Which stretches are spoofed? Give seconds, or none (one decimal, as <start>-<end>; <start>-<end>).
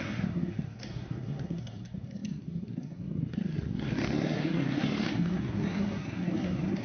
0.0-6.8